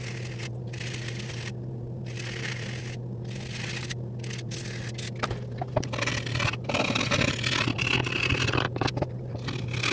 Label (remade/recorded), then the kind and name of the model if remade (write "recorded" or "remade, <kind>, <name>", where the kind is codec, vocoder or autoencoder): recorded